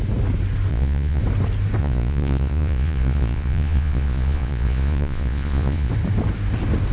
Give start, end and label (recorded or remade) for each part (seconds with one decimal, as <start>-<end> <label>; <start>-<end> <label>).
0.0-0.7 recorded; 0.7-1.2 remade; 1.2-1.8 recorded; 1.8-5.9 remade; 5.9-6.9 recorded